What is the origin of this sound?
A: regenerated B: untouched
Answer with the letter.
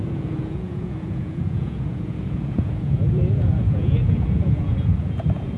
A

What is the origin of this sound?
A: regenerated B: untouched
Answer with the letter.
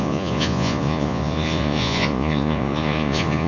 A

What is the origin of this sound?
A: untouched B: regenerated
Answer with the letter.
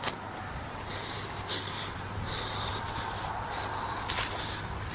A